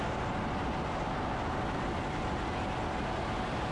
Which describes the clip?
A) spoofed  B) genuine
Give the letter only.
B